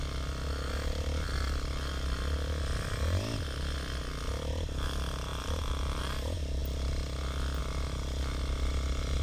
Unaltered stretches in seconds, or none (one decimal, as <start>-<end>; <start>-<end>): 0.0-9.2